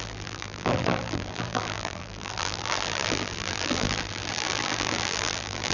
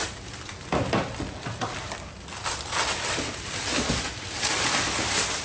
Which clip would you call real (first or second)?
second